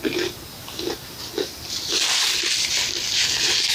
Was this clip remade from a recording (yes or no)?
no